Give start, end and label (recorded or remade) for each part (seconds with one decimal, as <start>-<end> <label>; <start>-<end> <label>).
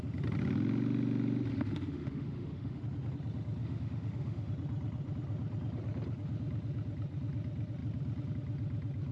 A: 0.0-1.5 recorded; 1.5-2.8 remade; 2.8-3.6 recorded; 3.6-4.5 remade; 4.5-9.1 recorded